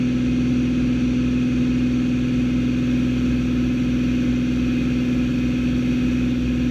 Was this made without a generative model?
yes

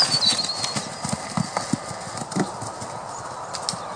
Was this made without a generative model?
yes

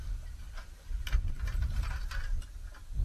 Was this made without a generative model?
yes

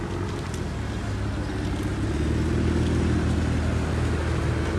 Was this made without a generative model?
yes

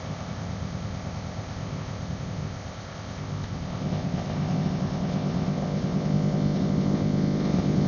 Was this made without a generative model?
no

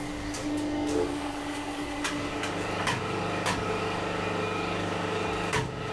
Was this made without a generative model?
no